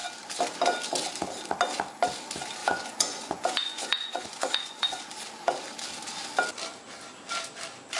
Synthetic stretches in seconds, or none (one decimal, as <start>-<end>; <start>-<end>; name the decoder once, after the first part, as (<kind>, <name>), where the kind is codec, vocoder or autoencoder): 2.6-5.1 (vocoder, Vocos)